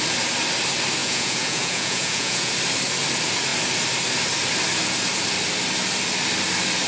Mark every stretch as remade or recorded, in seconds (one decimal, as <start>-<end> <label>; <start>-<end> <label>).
0.0-1.0 recorded; 1.0-2.5 remade; 2.5-6.9 recorded